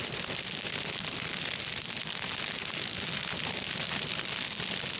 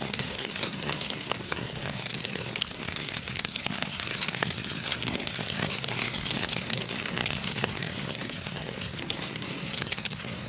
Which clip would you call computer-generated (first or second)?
second